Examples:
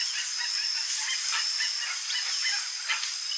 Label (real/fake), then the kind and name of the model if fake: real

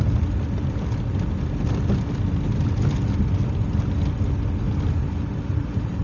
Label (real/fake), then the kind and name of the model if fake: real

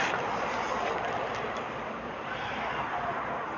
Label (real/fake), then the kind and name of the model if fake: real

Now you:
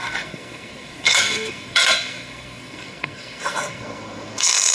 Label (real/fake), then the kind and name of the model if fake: fake, codec, SNAC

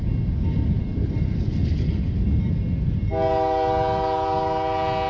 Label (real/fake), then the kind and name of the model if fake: real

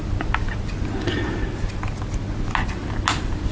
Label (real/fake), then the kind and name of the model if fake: real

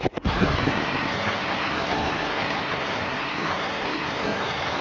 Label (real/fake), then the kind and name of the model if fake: fake, codec, SNAC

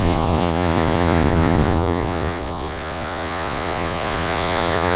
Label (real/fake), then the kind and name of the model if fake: fake, vocoder, Vocos